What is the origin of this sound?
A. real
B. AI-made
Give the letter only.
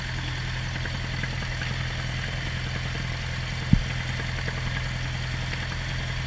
A